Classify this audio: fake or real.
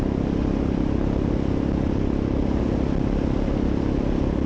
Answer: real